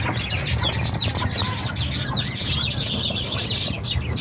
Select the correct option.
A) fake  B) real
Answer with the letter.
B